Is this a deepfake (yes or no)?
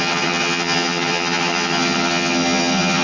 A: yes